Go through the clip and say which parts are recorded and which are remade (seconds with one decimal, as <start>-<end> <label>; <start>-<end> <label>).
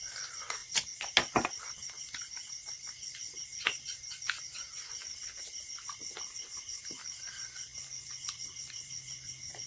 0.0-9.7 recorded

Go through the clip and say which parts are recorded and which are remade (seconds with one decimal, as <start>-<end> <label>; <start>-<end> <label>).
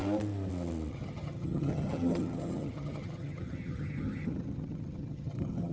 0.0-0.9 recorded; 0.9-5.7 remade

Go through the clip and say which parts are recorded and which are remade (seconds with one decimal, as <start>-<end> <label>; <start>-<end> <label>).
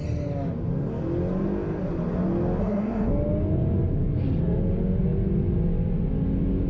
0.0-2.6 recorded; 2.6-3.1 remade; 3.1-6.7 recorded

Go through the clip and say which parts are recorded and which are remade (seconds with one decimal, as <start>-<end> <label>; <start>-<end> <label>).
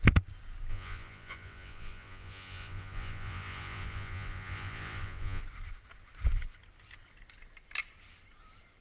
0.0-0.7 recorded; 0.7-5.4 remade; 5.4-8.8 recorded